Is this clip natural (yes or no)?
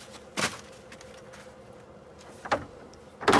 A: yes